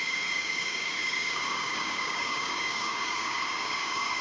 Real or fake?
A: fake